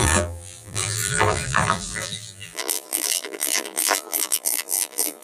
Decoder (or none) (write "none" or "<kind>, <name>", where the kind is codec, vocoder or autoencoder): vocoder, BigVGAN v2